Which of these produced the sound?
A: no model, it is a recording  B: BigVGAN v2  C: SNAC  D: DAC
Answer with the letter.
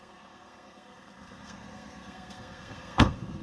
C